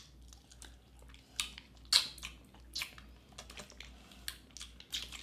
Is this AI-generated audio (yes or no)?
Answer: no